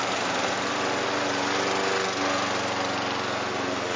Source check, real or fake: real